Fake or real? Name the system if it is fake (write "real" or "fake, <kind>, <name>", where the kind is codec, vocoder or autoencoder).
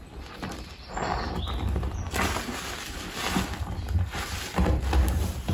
real